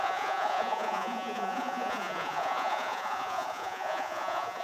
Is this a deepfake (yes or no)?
yes